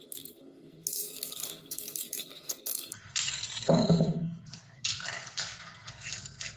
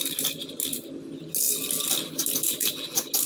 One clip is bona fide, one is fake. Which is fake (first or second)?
first